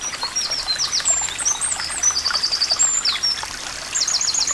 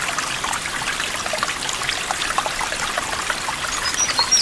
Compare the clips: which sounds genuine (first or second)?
second